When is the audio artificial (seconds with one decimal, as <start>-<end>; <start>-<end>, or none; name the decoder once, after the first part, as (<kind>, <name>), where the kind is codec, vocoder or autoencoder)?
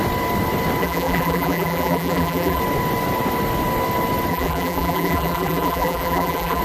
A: 0.8-2.6 (vocoder, BigVGAN v2); 4.3-6.6